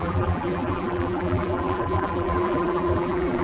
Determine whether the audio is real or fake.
fake